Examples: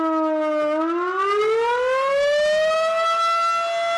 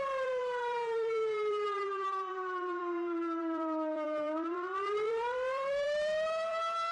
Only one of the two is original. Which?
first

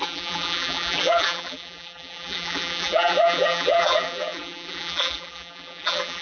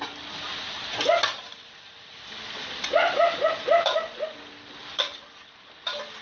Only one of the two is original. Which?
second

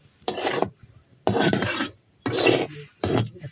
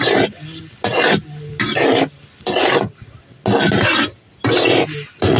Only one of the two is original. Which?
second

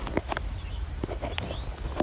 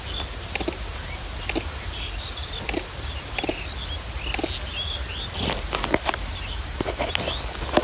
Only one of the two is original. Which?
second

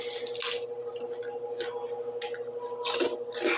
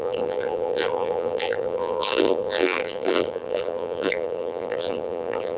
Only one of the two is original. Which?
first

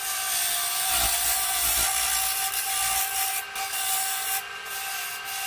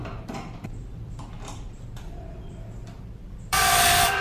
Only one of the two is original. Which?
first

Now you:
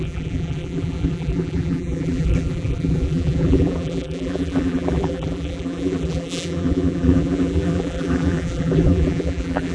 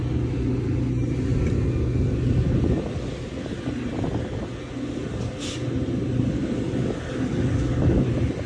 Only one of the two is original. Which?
second